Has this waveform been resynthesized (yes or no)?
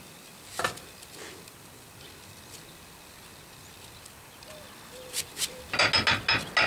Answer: no